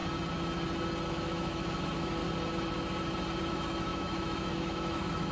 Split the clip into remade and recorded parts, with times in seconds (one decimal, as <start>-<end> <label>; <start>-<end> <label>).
0.0-1.1 recorded; 1.1-2.2 remade; 2.2-3.5 recorded; 3.5-5.3 remade